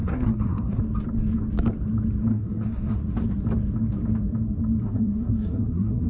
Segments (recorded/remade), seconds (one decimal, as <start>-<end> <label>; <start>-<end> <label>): 0.0-0.8 remade; 0.8-2.3 recorded; 2.3-3.0 remade; 3.0-4.8 recorded; 4.8-6.1 remade